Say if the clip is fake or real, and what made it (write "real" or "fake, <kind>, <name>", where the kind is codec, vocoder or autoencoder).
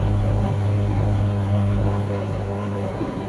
fake, codec, SNAC